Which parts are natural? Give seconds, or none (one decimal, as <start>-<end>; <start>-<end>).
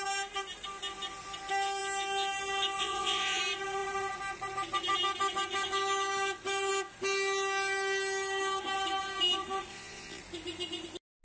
0.0-2.8; 3.4-9.7; 10.2-11.2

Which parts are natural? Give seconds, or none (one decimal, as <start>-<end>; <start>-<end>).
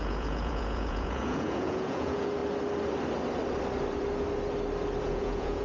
2.4-5.0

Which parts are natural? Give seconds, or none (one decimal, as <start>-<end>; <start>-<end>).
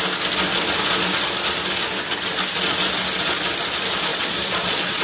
0.0-4.1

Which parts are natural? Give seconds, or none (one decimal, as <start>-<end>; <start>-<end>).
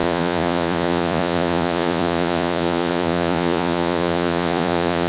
none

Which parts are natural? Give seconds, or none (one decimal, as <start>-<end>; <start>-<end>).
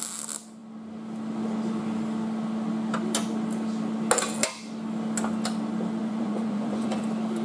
0.0-6.0; 7.0-7.4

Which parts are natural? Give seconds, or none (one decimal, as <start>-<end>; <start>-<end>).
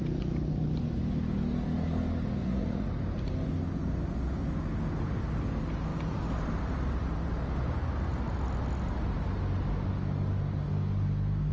0.0-2.4; 2.9-11.5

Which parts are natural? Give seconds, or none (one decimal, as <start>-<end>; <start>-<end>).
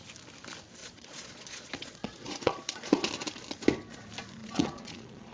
0.0-0.8; 3.1-4.4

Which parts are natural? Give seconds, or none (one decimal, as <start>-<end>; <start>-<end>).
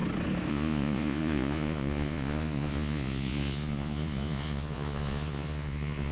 0.0-0.5